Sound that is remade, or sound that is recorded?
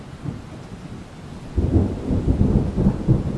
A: recorded